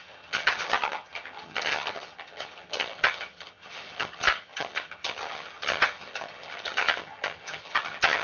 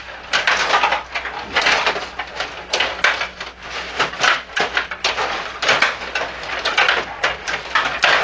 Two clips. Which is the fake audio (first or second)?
first